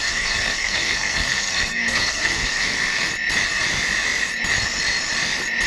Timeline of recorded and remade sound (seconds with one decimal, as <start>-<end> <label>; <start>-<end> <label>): 0.0-3.1 remade; 3.1-5.7 recorded